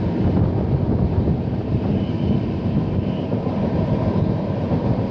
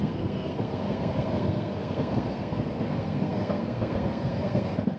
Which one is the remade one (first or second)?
second